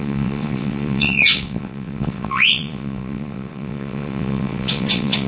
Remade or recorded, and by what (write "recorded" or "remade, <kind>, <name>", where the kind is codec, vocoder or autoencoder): remade, vocoder, WaveNeXt